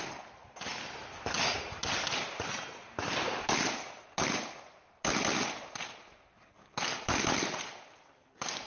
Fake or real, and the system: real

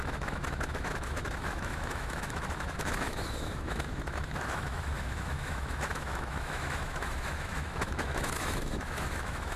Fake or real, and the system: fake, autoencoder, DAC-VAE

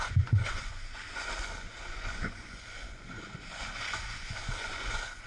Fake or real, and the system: fake, vocoder, Vocos